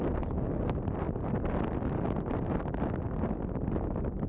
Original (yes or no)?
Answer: yes